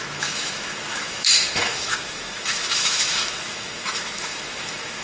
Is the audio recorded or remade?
remade